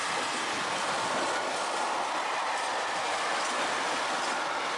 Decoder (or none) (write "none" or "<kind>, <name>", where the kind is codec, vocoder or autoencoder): none